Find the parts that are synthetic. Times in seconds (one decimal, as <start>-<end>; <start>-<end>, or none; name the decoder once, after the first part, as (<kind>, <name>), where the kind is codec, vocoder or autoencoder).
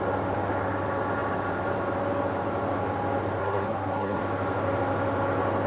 3.4-4.2 (codec, SNAC)